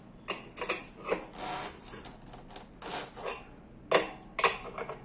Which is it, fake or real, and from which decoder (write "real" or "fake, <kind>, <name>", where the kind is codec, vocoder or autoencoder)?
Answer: real